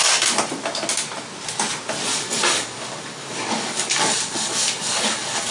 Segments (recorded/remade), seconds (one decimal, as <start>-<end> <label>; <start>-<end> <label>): 0.0-2.1 recorded; 2.1-5.5 remade